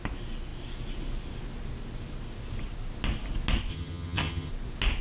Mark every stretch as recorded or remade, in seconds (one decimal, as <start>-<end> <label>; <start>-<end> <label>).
0.0-3.7 recorded; 3.7-4.5 remade; 4.5-5.0 recorded